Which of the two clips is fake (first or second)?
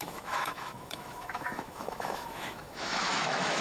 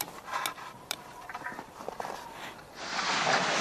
first